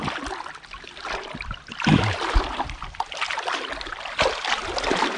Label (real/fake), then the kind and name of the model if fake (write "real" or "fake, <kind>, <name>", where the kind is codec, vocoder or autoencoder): real